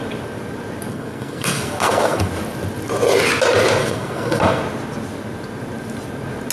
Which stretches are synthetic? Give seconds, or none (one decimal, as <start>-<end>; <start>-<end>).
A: 0.9-2.3; 3.8-4.6